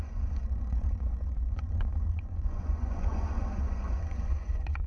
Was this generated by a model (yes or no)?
yes